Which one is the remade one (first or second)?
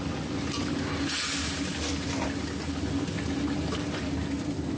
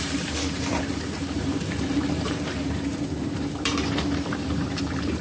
second